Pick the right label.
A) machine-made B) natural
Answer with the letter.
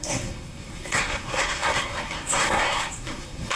A